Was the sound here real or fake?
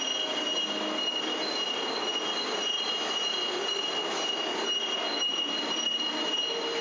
real